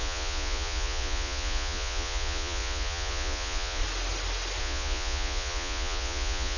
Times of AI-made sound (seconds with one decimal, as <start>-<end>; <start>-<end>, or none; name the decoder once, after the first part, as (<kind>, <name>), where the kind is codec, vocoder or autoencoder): 0.0-3.8 (vocoder, Vocos); 4.6-6.6